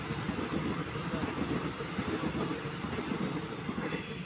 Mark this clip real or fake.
real